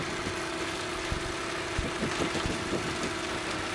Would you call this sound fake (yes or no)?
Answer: no